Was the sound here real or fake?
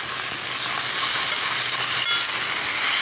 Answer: real